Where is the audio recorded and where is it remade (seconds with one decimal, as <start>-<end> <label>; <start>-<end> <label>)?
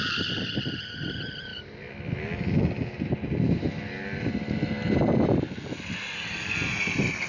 0.0-7.3 recorded